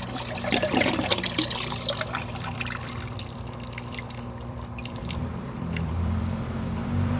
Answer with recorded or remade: remade